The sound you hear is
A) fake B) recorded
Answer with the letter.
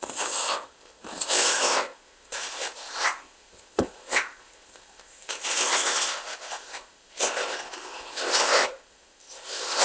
A